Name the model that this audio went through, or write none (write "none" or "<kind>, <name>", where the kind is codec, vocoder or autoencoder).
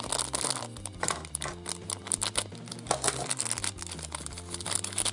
none